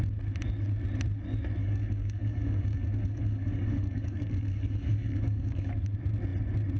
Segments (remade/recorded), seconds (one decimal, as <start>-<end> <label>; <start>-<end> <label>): 0.0-1.6 recorded; 1.6-5.7 remade; 5.7-6.8 recorded

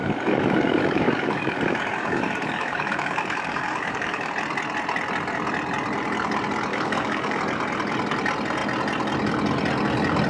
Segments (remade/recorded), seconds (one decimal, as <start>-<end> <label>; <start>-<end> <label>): 0.0-4.3 remade; 4.3-6.7 recorded; 6.7-7.4 remade; 7.4-10.3 recorded

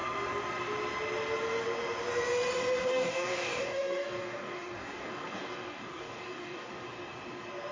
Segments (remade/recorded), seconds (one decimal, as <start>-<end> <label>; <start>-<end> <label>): 0.0-2.8 recorded; 2.8-6.7 remade; 6.7-7.7 recorded

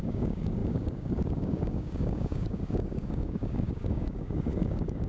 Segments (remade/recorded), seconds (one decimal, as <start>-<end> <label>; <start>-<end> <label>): 0.0-5.1 remade

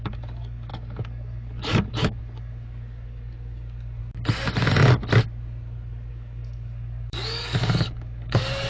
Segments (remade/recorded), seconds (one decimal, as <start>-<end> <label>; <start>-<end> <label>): 0.0-4.0 remade; 4.0-6.1 recorded; 6.1-8.7 remade

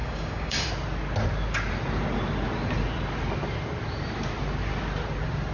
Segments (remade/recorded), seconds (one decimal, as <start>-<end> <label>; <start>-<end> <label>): 0.0-0.7 remade; 0.7-5.5 recorded